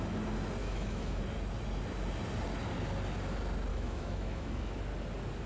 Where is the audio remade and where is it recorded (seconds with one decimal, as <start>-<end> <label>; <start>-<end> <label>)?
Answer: 0.0-0.6 recorded; 0.6-1.2 remade; 1.2-3.7 recorded; 3.7-4.8 remade; 4.8-5.5 recorded